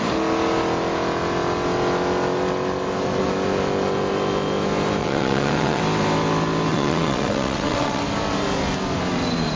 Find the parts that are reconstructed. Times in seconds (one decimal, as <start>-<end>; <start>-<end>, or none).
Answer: 5.0-5.8; 6.7-8.0